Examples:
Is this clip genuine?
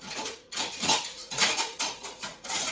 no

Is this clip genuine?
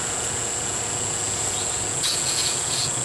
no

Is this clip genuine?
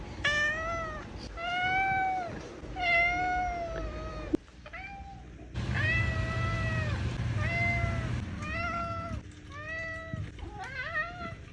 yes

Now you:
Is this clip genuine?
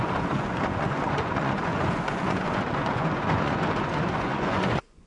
no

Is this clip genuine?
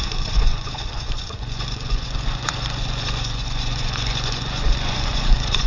no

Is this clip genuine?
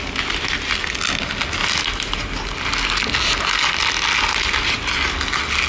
yes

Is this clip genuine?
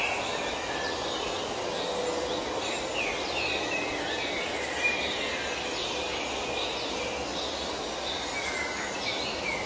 yes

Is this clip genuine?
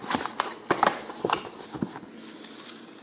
yes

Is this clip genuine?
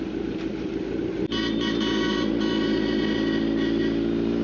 yes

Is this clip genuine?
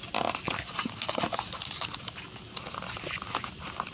yes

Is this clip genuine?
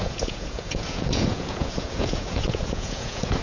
no